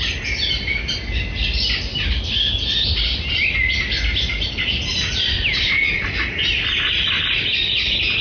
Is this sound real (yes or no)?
yes